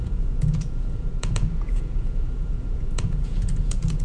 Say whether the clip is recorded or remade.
remade